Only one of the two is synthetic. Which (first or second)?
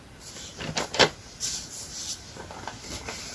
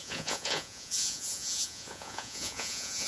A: second